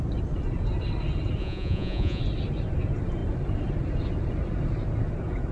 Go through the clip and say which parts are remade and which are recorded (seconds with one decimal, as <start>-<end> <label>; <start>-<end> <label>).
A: 0.0-1.4 recorded; 1.4-2.2 remade; 2.2-5.5 recorded